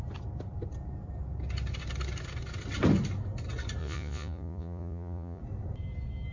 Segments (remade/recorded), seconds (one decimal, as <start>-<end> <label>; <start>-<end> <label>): 0.0-3.8 recorded; 3.8-5.4 remade; 5.4-6.3 recorded